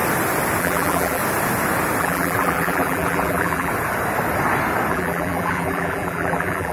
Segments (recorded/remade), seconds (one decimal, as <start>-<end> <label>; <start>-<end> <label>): 0.0-0.6 recorded; 0.6-1.2 remade; 1.2-2.0 recorded; 2.0-3.7 remade; 3.7-4.9 recorded; 4.9-6.7 remade

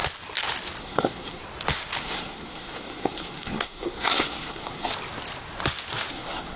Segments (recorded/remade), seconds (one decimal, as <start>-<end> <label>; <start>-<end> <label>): 0.0-0.8 recorded; 0.8-1.4 remade; 1.4-2.0 recorded; 2.0-4.9 remade; 4.9-6.1 recorded; 6.1-6.6 remade

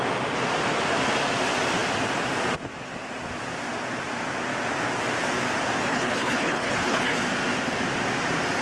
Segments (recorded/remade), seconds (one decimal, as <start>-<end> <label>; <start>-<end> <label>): 0.0-5.9 recorded; 5.9-7.2 remade; 7.2-8.6 recorded

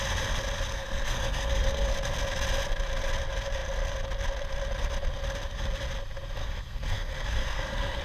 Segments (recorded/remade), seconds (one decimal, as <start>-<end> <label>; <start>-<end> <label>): 0.0-0.7 recorded; 0.7-1.9 remade; 1.9-6.4 recorded; 6.4-8.0 remade